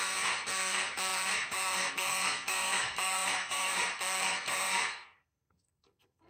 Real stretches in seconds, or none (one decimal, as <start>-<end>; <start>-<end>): none